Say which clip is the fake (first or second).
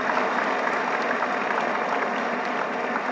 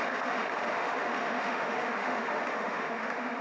second